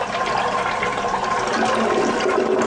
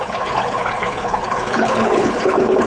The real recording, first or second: first